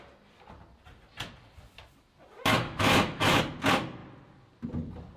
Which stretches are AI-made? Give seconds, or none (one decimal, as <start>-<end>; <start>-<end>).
2.5-3.4